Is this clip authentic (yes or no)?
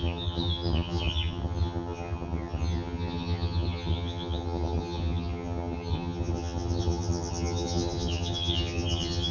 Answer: no